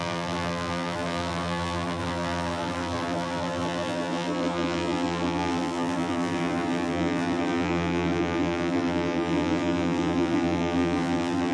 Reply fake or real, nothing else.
fake